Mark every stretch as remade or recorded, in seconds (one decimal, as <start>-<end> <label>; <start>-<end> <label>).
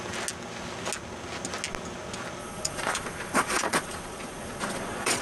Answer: 0.0-2.4 recorded; 2.4-5.2 remade